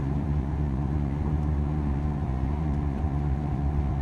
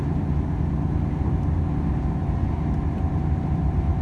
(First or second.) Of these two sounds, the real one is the second